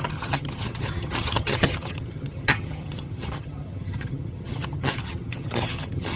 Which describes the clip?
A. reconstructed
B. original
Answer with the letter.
A